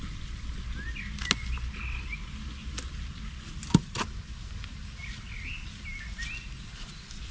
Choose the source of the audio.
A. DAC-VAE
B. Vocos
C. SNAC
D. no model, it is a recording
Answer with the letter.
D